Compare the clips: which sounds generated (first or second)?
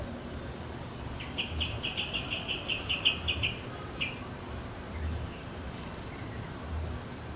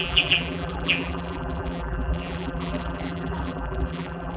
second